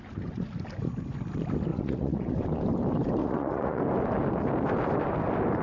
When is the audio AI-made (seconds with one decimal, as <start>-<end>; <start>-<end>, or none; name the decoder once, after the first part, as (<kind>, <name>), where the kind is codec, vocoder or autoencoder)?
1.7-2.4 (vocoder, Vocos); 3.2-3.8